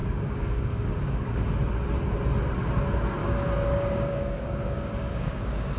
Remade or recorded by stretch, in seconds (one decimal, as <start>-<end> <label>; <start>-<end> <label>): 0.0-1.5 remade; 1.5-3.2 recorded; 3.2-5.8 remade